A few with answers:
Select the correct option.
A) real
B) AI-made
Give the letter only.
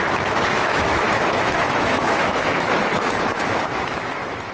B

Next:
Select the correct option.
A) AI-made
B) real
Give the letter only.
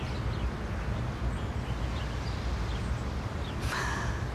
B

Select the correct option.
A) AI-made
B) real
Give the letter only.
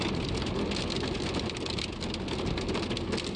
B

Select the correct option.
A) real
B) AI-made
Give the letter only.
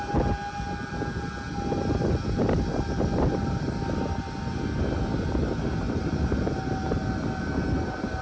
A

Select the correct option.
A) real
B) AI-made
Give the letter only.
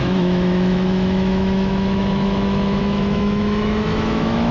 B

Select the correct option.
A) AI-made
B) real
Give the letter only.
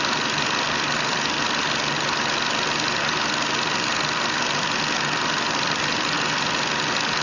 B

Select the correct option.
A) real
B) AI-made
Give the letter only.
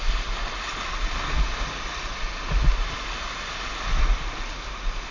A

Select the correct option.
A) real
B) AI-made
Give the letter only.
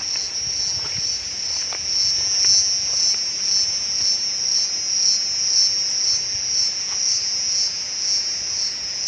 A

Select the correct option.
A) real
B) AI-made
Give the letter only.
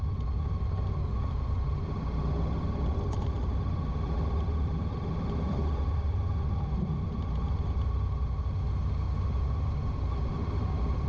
A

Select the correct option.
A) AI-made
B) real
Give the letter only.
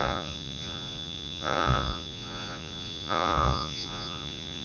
A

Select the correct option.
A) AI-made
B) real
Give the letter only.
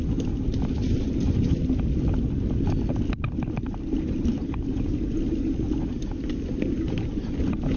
B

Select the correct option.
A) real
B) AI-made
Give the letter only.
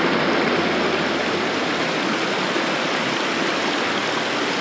A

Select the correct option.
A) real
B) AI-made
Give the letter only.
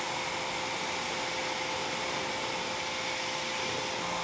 A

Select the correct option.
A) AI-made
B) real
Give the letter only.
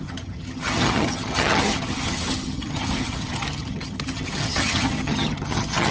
A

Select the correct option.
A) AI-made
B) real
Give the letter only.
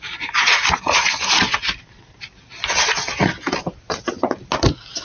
B